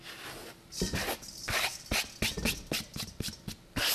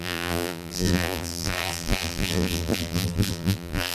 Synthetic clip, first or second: second